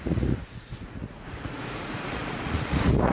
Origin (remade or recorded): remade